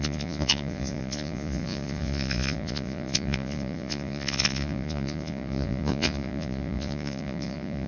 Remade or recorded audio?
remade